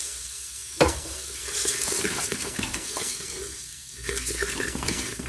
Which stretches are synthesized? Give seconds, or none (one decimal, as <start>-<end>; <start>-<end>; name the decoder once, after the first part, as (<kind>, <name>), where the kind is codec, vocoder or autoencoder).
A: 0.0-5.3 (codec, SNAC)